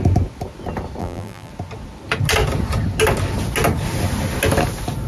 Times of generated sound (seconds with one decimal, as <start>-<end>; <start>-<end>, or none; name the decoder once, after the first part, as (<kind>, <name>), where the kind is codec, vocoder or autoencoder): 1.0-1.5 (vocoder, BigVGAN v2)